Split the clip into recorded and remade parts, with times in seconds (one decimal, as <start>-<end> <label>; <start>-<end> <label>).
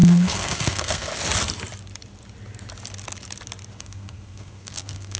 0.0-1.1 remade; 1.1-3.8 recorded; 3.8-5.2 remade